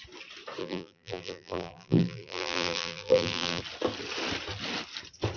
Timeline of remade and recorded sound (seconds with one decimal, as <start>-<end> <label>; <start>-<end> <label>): 0.0-0.6 recorded; 0.6-3.6 remade; 3.6-5.4 recorded